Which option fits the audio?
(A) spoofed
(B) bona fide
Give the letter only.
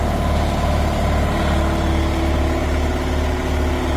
B